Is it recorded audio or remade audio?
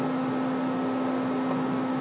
recorded